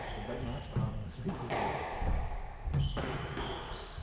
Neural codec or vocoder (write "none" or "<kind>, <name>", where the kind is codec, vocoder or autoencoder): codec, DAC